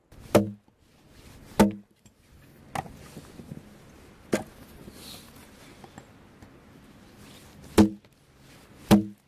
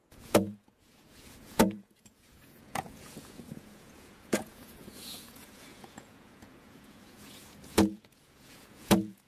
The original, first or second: first